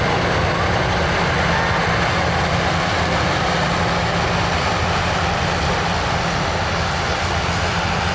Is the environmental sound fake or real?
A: real